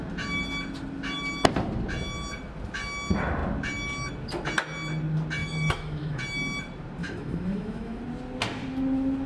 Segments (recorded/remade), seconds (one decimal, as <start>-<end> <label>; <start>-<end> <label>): 0.0-5.4 recorded; 5.4-6.2 remade; 6.2-7.0 recorded; 7.0-8.0 remade; 8.0-9.3 recorded